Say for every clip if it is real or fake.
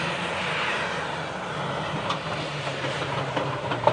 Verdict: fake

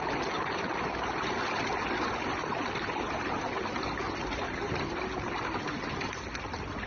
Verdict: real